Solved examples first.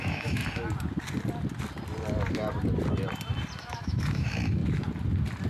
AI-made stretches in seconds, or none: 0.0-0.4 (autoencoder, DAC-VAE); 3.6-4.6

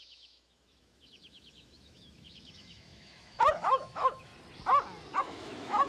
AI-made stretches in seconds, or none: 0.0-4.3 (autoencoder, DAC-VAE); 5.2-5.9

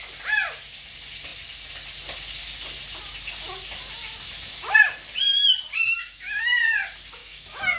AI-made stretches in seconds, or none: 5.9-6.5 (autoencoder, DAC-VAE); 7.2-7.8

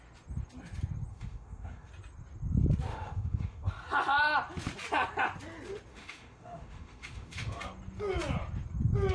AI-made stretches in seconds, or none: 1.1-1.9 (autoencoder, DAC-VAE); 2.9-3.7; 5.9-7.6

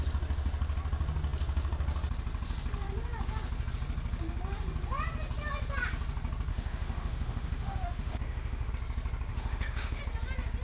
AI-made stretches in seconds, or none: 6.5-8.7 (autoencoder, DAC-VAE); 9.3-10.0

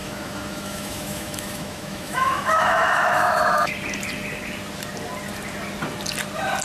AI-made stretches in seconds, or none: 0.0-3.7 (autoencoder, DAC-VAE)

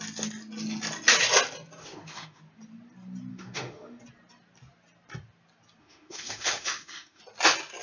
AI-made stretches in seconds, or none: 1.8-2.4 (autoencoder, DAC-VAE); 3.3-4.0; 5.8-7.2